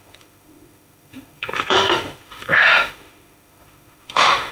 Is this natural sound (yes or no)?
no